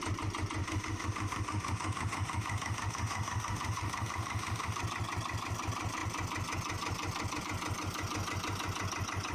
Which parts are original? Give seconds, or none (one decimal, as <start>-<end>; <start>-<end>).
0.0-0.6; 4.8-9.3